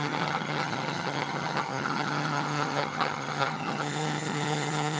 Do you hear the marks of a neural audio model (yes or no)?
yes